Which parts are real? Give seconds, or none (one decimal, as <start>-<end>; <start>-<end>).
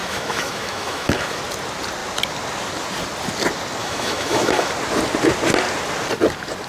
1.4-3.8; 4.7-6.7